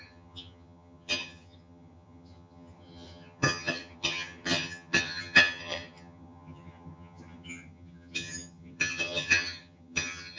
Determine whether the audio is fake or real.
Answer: fake